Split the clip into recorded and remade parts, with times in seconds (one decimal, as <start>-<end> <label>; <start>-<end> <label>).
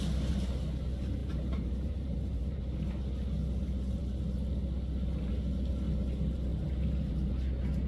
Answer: 0.0-1.2 recorded; 1.2-2.6 remade; 2.6-6.5 recorded; 6.5-7.3 remade; 7.3-7.9 recorded